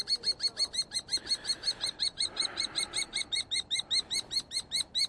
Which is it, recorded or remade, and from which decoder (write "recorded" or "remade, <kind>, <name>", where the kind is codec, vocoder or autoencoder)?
recorded